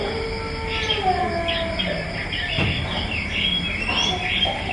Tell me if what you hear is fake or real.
real